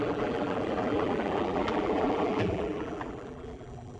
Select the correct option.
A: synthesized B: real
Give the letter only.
A